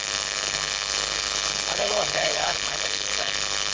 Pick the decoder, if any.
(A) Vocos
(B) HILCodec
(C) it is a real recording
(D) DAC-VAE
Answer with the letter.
B